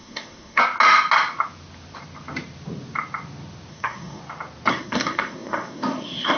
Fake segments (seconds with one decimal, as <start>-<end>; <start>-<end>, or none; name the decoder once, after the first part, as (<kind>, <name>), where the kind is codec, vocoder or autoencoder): 0.0-0.6 (codec, SNAC); 3.7-4.2; 4.7-6.4